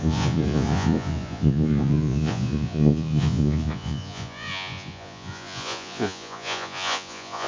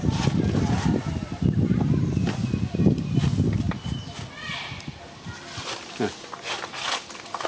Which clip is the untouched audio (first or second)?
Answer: second